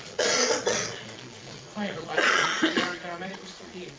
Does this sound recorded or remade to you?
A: remade